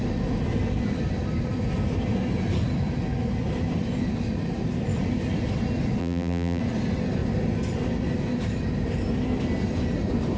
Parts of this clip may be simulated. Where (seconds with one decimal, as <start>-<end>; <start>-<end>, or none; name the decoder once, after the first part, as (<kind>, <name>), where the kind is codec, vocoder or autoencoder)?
6.0-6.6 (vocoder, BigVGAN v2)